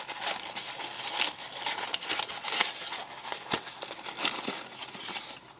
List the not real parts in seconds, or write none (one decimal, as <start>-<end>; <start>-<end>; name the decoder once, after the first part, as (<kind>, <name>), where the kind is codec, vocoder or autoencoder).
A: none